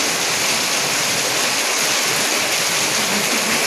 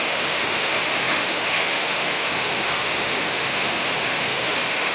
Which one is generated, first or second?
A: second